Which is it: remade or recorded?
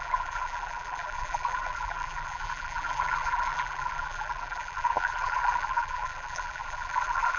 remade